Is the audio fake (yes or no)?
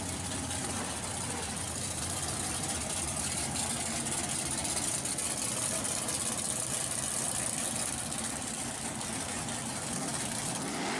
no